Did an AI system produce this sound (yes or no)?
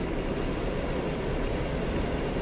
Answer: no